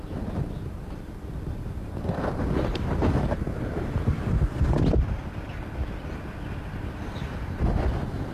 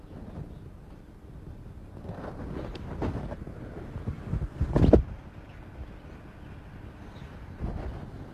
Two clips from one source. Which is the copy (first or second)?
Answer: first